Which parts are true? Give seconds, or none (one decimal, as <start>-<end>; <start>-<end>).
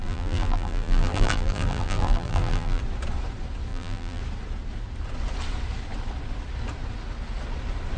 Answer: 2.8-3.7; 4.2-8.0